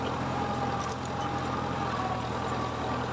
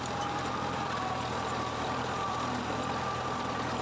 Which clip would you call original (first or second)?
first